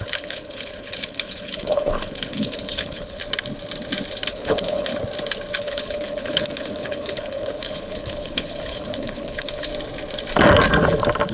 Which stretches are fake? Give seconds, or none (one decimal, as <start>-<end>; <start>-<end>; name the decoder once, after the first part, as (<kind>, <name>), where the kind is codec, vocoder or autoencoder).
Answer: 0.0-3.2 (codec, HILCodec); 4.3-4.9; 5.6-9.7

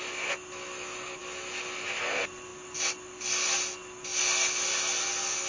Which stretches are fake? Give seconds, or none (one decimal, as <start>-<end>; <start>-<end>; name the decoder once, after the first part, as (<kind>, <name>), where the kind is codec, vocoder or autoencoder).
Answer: none